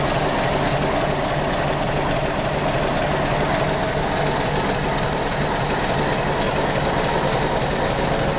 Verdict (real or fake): real